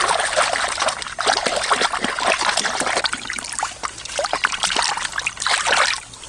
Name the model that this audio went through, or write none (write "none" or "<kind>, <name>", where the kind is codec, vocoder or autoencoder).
none